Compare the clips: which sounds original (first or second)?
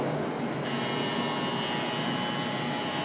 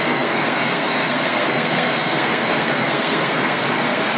first